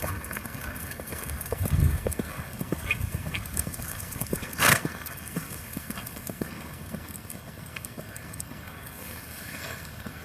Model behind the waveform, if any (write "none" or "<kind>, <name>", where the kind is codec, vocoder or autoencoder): codec, SNAC